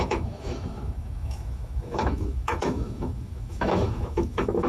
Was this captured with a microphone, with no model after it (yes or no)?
no